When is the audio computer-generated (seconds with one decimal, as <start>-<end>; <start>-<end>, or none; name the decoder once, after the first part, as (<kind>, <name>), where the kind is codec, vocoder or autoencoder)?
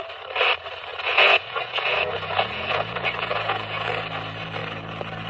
0.9-3.9 (vocoder, Vocos)